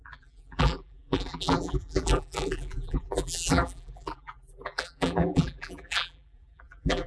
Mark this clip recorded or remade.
remade